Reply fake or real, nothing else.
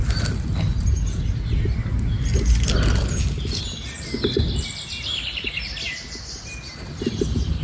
real